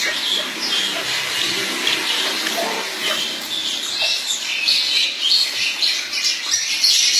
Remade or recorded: recorded